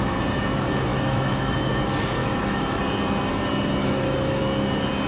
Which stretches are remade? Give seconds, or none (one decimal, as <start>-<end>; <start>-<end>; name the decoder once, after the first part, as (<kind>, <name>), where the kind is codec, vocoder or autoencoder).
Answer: 0.9-1.7 (autoencoder, DAC-VAE); 2.2-2.8; 3.8-4.4